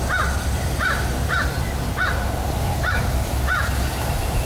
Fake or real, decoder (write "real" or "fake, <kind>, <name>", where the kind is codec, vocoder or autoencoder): real